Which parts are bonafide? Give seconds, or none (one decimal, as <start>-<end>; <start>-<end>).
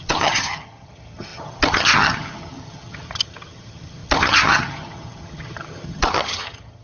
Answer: none